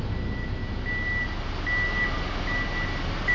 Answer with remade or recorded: recorded